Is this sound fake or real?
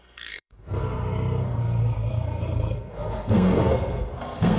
fake